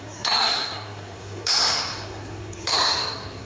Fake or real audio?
fake